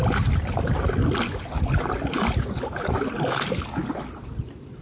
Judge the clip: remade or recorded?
recorded